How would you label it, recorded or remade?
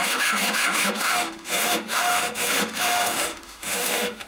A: remade